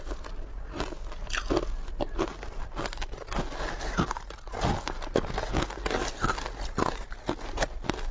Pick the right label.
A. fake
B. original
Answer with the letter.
B